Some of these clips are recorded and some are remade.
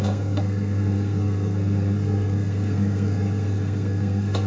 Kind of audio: remade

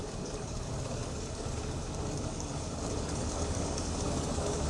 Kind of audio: remade